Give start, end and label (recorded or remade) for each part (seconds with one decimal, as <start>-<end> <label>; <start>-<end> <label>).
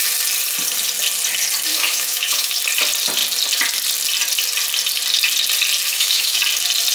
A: 0.0-1.7 recorded; 1.7-2.5 remade; 2.5-5.9 recorded; 5.9-6.4 remade; 6.4-6.9 recorded